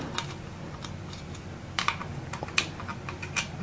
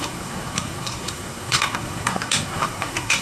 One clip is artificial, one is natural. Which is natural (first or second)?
first